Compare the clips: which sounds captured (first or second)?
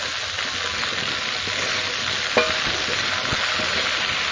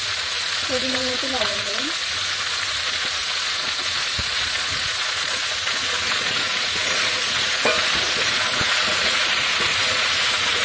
first